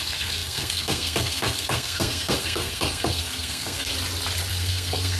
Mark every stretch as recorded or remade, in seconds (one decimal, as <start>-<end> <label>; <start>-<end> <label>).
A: 0.0-3.9 remade; 3.9-4.5 recorded; 4.5-5.2 remade